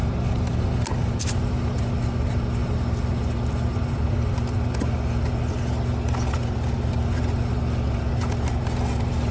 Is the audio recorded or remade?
recorded